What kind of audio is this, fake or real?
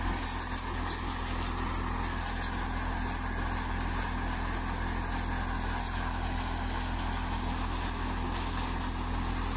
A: real